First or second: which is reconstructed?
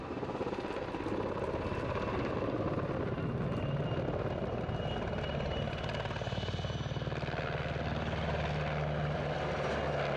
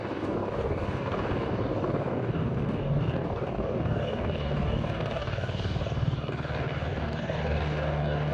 second